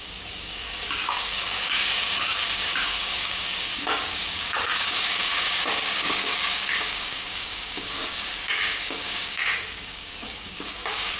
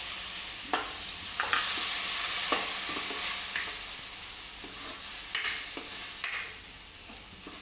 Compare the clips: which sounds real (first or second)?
second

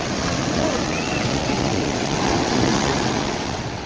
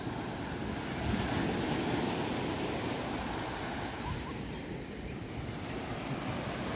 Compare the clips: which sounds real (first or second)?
second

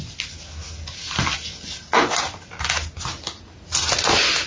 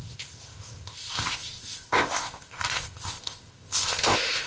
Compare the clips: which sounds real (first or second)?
first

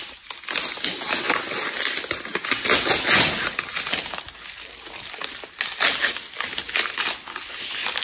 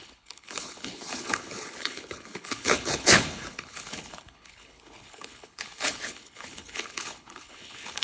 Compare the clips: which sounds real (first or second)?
first